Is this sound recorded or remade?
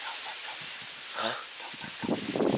recorded